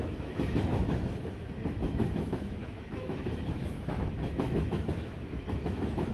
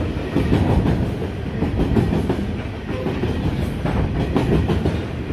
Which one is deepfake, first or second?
first